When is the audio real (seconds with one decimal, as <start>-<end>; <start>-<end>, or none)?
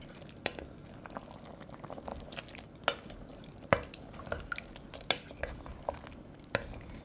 0.0-7.0